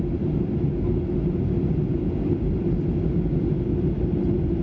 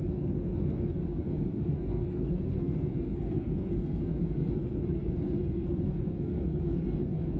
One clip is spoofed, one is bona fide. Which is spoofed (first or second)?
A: second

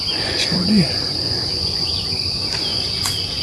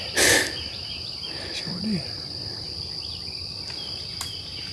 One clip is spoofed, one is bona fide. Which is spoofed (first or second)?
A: first